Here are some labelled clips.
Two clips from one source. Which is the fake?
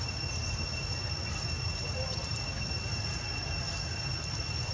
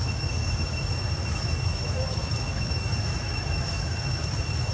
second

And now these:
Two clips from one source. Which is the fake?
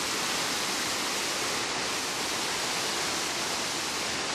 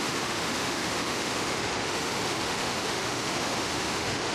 second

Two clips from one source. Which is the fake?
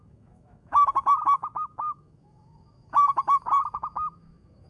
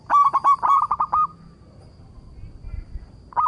first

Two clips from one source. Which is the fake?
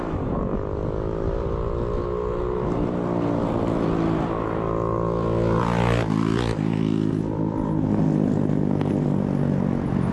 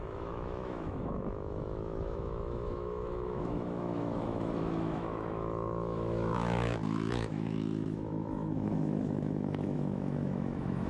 second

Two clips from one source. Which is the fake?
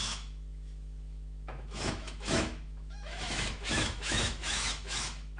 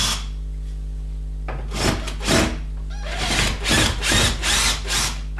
first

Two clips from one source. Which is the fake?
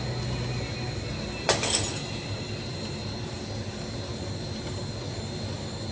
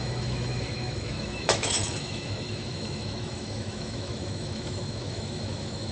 second